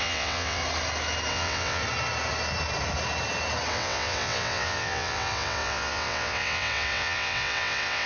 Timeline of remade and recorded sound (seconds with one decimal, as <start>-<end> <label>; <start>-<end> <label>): 0.0-0.6 remade; 0.6-1.3 recorded; 1.3-1.8 remade; 1.8-3.7 recorded; 3.7-8.1 remade